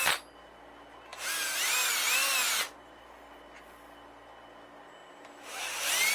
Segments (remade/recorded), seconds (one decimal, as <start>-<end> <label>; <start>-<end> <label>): 0.0-6.1 recorded